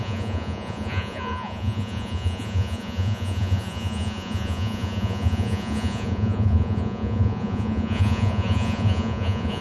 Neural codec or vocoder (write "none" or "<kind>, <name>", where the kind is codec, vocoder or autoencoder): vocoder, Vocos